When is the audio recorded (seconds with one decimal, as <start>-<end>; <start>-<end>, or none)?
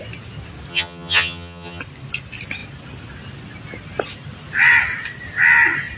0.0-0.7; 1.8-6.0